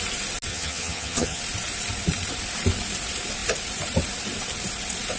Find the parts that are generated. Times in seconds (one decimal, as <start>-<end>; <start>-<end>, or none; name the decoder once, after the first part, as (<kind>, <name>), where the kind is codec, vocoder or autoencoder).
0.5-1.4 (vocoder, HiFi-GAN)